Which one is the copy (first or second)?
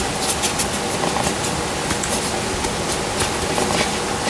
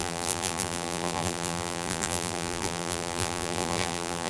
second